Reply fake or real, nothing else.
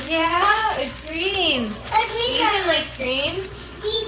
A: fake